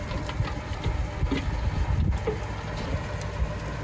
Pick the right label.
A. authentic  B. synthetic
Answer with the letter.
A